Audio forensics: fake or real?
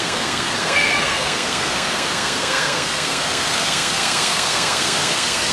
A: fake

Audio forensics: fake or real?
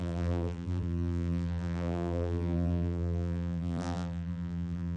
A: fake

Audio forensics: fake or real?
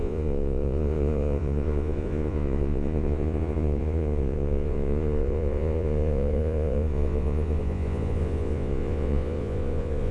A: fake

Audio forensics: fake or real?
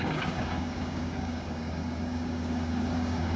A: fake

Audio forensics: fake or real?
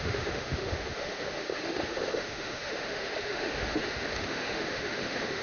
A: fake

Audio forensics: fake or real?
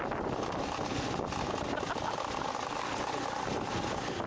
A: real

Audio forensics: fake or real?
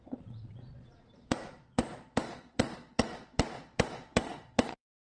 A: fake